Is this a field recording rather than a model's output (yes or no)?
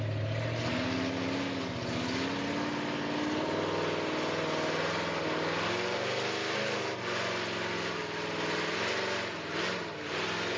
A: yes